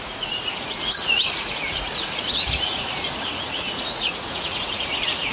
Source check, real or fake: fake